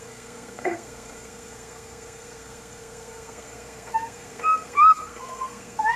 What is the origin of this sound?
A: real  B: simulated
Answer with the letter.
B